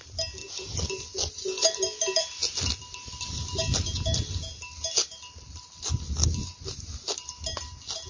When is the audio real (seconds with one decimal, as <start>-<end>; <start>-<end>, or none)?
0.0-8.1